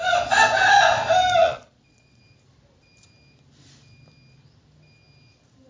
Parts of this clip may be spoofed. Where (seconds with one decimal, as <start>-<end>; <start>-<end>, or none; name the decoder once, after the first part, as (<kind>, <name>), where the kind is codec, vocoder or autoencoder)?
1.4-2.2 (vocoder, Vocos)